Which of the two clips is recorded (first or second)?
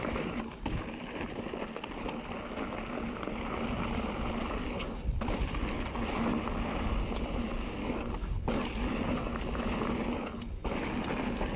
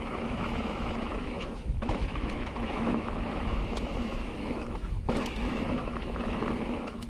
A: first